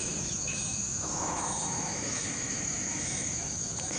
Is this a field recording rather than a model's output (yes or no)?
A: no